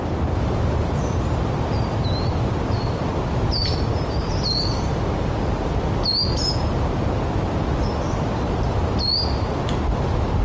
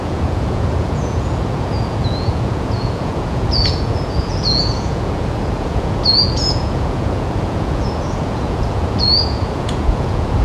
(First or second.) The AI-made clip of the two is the second